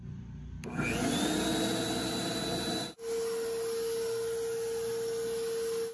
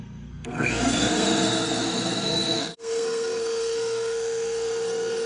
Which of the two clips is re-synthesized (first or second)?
second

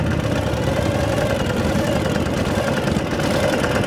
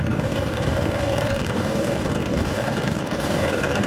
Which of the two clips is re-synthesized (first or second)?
second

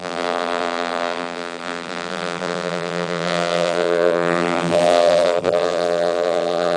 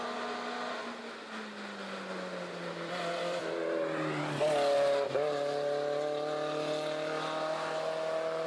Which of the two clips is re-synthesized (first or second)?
first